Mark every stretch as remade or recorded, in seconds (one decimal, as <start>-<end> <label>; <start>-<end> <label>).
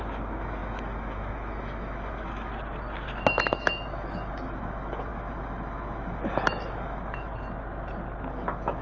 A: 0.0-2.5 remade; 2.5-3.4 recorded; 3.4-7.3 remade; 7.3-8.3 recorded; 8.3-8.8 remade